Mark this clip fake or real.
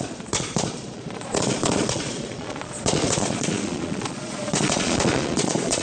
fake